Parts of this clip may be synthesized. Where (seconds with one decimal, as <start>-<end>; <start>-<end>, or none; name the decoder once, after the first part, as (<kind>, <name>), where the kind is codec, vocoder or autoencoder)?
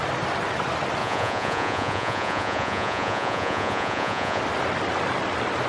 1.0-4.4 (vocoder, Vocos)